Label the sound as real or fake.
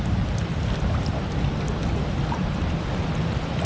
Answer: real